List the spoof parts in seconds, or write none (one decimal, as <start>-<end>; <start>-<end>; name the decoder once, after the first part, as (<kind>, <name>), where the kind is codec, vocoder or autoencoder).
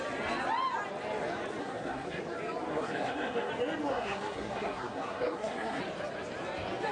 1.6-2.2 (codec, SNAC); 2.7-3.5; 3.9-5.8